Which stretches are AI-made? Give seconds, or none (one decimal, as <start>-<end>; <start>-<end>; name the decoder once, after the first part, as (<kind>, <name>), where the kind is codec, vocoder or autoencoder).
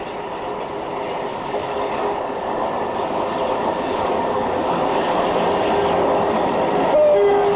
1.3-2.7 (codec, DAC); 3.6-5.4